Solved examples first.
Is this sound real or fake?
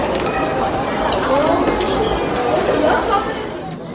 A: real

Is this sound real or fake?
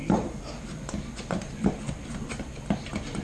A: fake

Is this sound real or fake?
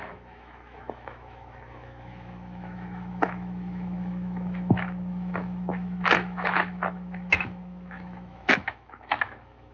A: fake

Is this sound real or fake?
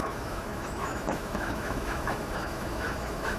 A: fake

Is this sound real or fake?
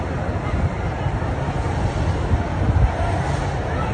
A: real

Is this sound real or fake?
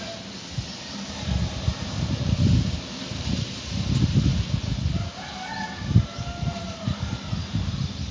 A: real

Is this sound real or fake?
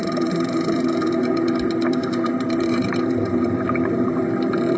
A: fake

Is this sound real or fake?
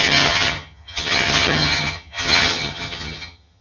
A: fake